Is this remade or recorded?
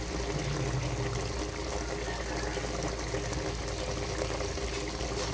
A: recorded